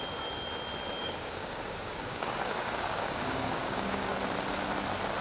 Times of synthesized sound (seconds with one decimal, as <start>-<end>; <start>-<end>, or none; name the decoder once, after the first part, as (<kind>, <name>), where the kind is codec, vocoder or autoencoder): 1.0-4.1 (codec, DAC)